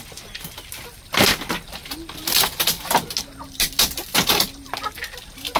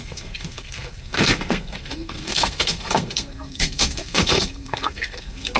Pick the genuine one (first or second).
first